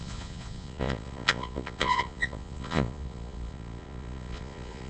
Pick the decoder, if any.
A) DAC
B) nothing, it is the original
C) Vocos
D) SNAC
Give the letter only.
C